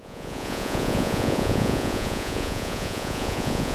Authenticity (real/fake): fake